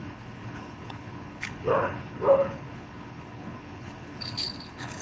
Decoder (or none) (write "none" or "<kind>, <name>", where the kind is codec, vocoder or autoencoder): codec, HILCodec